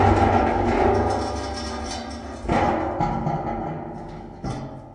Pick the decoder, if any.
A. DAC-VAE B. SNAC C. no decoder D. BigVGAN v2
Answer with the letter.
C